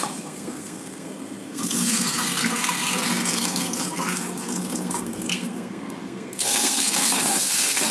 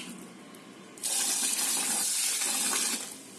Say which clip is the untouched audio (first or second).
second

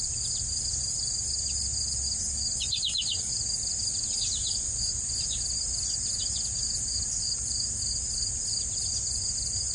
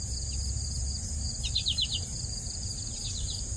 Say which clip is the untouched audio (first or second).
first